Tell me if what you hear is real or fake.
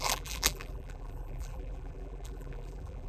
fake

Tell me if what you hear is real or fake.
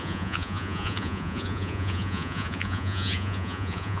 fake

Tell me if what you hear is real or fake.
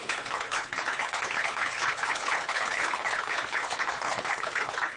fake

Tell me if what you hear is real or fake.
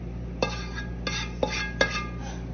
real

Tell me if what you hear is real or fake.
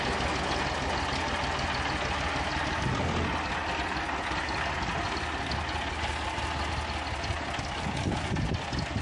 real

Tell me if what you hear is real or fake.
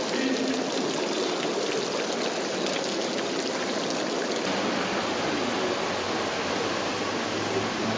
real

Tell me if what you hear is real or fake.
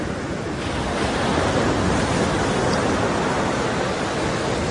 real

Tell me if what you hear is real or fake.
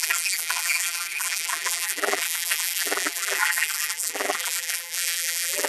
fake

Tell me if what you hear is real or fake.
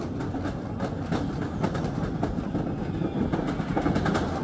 real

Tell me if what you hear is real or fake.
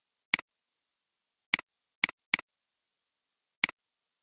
real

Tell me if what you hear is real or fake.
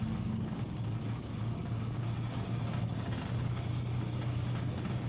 fake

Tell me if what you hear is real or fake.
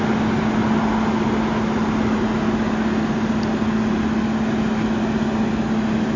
real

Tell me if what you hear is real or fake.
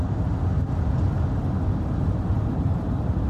real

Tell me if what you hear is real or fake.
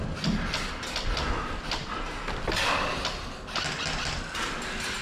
real